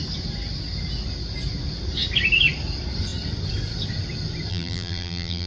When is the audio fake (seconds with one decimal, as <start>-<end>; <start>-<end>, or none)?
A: 4.5-5.5